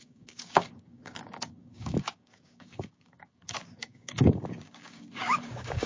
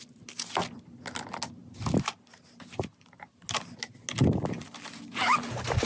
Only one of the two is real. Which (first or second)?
second